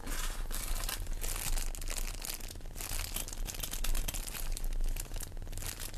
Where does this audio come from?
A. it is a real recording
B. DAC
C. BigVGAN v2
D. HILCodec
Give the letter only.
A